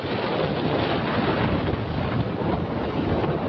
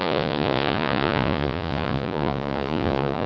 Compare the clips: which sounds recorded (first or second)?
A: first